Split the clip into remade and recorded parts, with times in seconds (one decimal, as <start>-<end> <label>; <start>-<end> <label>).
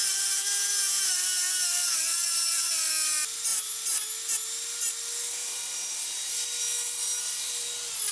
0.0-8.1 recorded